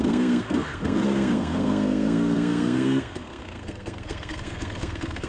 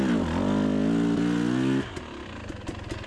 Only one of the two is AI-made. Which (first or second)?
first